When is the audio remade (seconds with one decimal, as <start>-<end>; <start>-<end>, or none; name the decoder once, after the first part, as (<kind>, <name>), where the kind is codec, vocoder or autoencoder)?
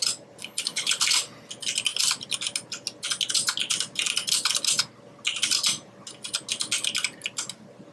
0.4-1.0 (codec, HILCodec)